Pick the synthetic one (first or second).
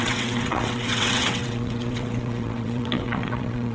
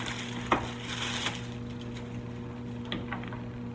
first